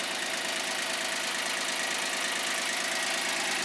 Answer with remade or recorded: recorded